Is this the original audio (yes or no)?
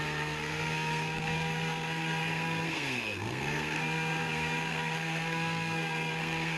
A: no